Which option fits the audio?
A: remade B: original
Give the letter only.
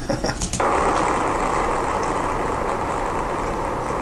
A